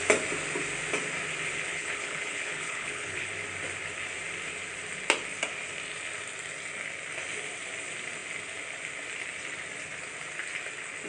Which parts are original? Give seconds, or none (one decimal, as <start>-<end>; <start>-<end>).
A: 0.0-1.7; 3.3-11.1